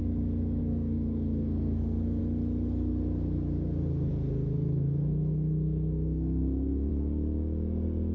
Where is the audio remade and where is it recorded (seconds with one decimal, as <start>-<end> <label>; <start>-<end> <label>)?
0.0-0.6 recorded; 0.6-2.2 remade; 2.2-4.1 recorded; 4.1-6.9 remade; 6.9-8.1 recorded